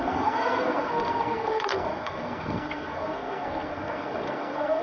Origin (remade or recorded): remade